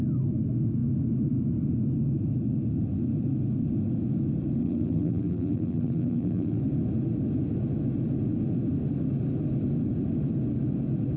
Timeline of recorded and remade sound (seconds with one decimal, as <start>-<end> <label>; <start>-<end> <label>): 0.0-4.6 recorded; 4.6-6.6 remade; 6.6-11.2 recorded